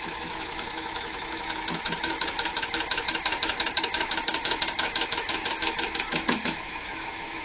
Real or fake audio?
fake